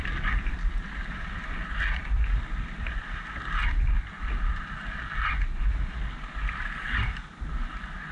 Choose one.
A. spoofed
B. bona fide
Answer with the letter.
B